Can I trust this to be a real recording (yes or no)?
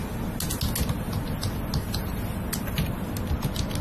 yes